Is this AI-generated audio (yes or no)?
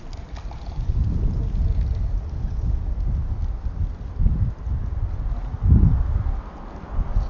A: no